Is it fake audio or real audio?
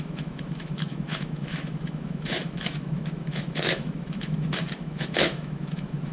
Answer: fake